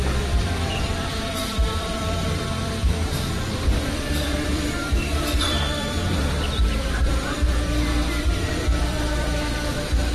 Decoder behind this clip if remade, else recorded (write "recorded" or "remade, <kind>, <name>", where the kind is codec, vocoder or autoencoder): remade, vocoder, BigVGAN v2